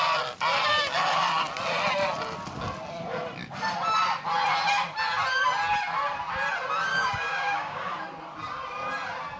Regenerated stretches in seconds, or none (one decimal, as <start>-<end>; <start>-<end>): 6.9-7.9